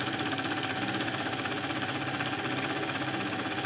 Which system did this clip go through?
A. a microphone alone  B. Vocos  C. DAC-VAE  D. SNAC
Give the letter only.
A